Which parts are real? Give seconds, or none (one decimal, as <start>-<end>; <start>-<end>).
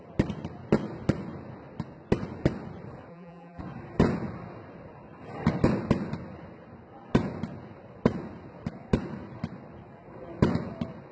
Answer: 0.0-3.1; 3.6-11.1